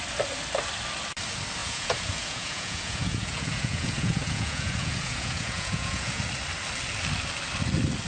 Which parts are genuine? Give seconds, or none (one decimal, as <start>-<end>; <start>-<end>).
0.0-1.6; 6.2-8.1